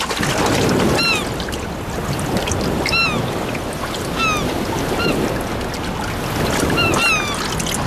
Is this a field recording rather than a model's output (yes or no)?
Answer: yes